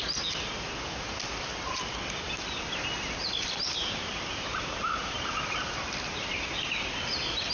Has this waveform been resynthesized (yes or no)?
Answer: yes